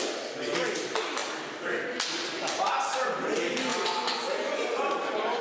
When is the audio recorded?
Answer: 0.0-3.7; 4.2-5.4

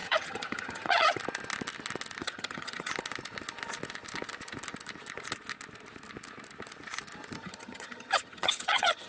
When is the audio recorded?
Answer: 1.2-2.2; 2.9-7.4